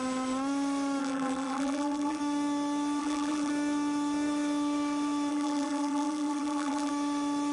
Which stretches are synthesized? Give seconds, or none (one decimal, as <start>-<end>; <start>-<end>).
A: 1.0-2.2; 3.0-3.5; 5.3-6.9